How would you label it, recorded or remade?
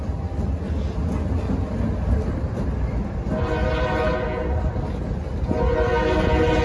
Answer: recorded